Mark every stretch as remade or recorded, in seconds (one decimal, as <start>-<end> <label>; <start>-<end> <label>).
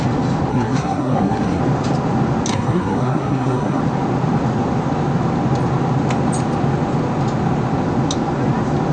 0.0-0.5 recorded; 0.5-1.6 remade; 1.6-2.5 recorded; 2.5-3.8 remade; 3.8-8.9 recorded